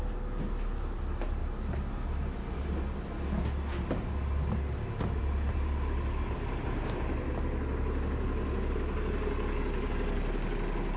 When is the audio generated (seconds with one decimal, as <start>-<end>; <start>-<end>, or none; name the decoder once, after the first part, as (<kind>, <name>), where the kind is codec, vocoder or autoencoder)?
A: none